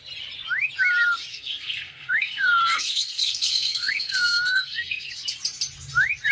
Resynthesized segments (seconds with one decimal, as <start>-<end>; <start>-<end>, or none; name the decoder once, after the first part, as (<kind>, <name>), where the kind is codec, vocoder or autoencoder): 1.3-5.1 (codec, SNAC)